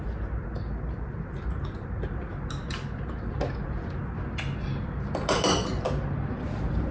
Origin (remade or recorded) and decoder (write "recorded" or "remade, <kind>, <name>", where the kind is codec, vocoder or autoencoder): recorded